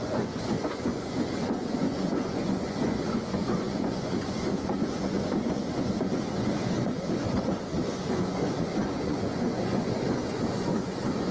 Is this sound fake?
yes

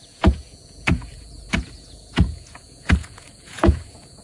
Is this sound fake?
yes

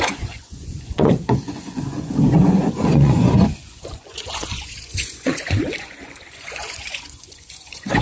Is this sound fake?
yes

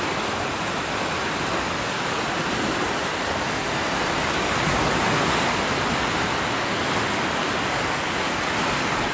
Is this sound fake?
no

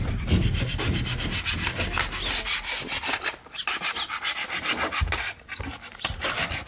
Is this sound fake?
no